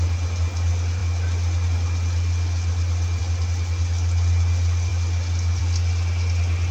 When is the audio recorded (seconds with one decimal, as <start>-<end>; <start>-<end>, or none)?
0.0-6.7